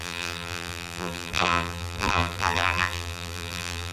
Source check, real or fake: fake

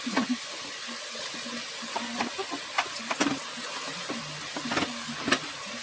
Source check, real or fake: real